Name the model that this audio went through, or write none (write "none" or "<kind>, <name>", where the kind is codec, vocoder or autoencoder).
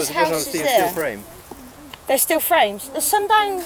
vocoder, Vocos